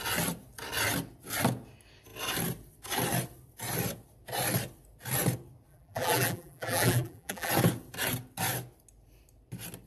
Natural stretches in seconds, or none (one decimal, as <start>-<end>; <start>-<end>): 0.0-5.7; 7.5-9.9